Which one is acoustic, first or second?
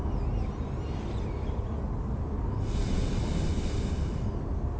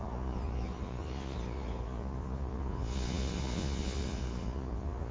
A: first